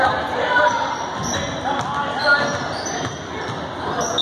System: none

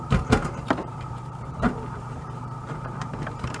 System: vocoder, BigVGAN v2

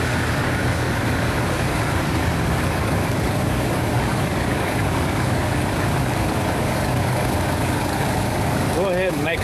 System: codec, DAC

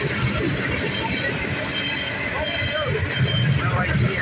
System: none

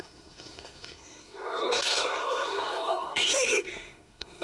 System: codec, SNAC